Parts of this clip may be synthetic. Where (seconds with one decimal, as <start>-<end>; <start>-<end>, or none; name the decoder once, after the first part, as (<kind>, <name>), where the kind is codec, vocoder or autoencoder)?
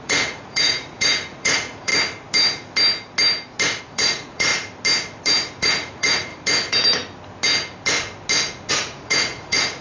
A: 0.0-1.9 (vocoder, Vocos); 3.8-4.5; 5.6-6.3; 8.7-9.8